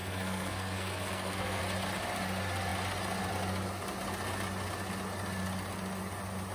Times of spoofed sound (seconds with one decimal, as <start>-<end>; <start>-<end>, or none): 0.0-1.6